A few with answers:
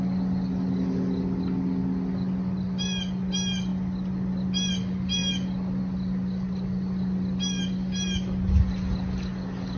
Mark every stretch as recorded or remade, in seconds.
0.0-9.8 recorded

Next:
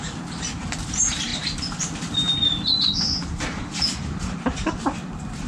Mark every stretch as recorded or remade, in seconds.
0.0-5.5 recorded

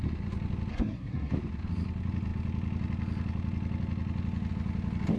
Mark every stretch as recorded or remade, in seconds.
0.0-0.7 recorded; 0.7-1.3 remade; 1.3-5.2 recorded